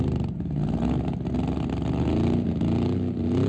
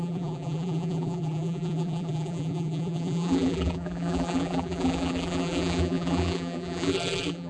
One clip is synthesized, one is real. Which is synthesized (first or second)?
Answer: second